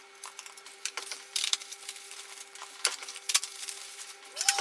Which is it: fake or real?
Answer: fake